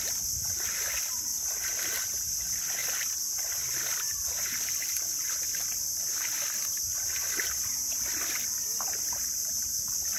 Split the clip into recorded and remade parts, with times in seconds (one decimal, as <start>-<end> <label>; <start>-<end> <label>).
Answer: 0.0-10.2 recorded